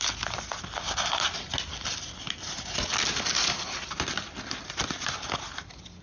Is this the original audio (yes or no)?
yes